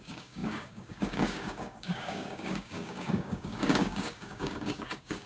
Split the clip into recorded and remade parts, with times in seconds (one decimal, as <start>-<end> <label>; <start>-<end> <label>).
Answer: 0.0-5.3 remade